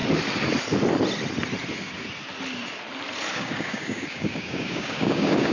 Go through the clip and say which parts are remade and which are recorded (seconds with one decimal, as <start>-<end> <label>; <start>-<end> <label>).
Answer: 0.0-3.3 recorded; 3.3-5.5 remade